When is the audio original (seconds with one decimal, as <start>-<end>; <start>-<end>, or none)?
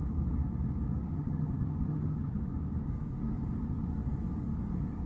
0.0-1.0; 2.4-5.1